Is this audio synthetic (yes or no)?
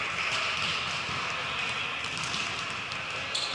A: no